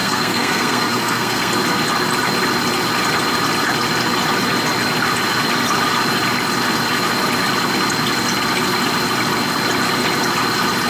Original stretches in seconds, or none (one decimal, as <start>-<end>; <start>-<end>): 1.5-10.9